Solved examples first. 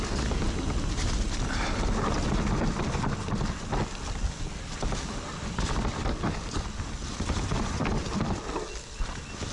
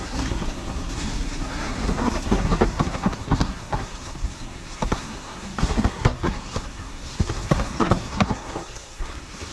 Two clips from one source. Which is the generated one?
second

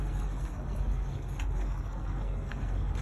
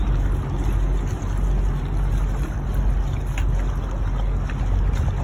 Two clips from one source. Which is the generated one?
first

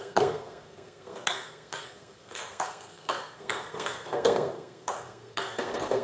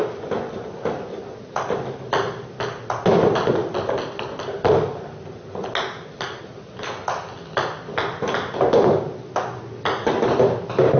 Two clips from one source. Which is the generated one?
first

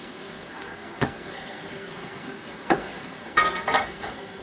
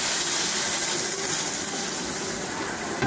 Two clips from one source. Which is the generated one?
first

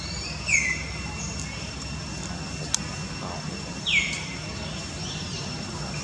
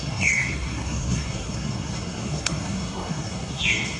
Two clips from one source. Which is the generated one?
second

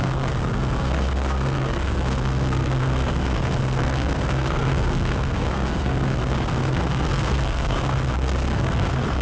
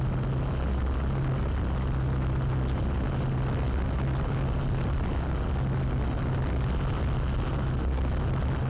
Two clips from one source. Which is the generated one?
first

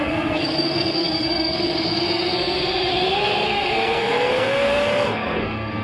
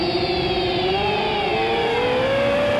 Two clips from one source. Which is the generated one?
first